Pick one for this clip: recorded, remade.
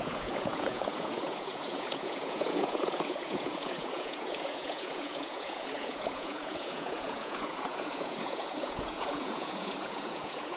remade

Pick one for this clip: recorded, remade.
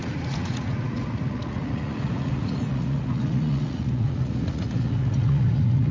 remade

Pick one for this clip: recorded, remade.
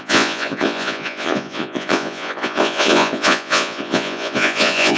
remade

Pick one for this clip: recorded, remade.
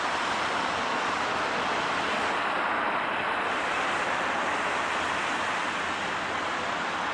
recorded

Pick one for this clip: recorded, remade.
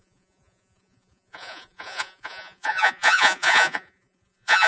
remade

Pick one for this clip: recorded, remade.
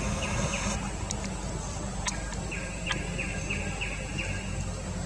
recorded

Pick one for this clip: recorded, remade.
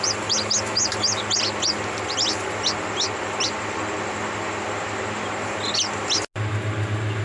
recorded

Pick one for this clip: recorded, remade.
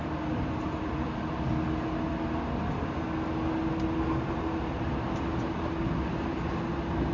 recorded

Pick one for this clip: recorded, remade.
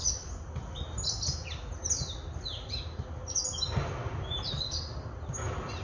recorded